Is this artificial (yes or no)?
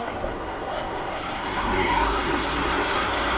yes